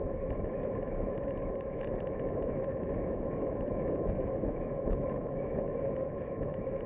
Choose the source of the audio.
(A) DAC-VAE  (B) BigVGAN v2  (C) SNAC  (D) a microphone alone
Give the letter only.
A